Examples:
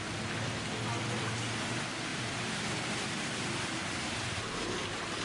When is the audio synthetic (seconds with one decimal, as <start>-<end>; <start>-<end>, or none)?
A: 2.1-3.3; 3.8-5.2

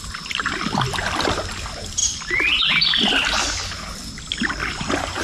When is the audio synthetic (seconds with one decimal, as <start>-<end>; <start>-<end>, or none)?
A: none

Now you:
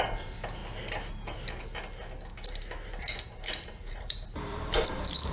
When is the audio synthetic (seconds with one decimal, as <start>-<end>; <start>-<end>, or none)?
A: 0.0-0.6; 3.8-5.3

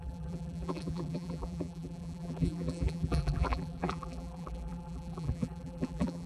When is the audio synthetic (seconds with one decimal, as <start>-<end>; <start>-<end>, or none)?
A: 0.0-6.3

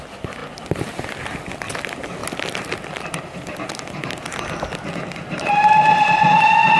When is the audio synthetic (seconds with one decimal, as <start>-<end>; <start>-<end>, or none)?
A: none

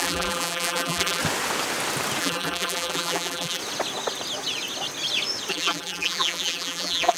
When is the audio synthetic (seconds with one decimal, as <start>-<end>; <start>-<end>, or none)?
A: 0.0-1.2; 2.2-3.6; 5.5-7.2